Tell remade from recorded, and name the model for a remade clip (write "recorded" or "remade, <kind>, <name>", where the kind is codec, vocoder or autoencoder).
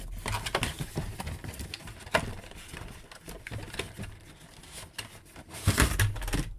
recorded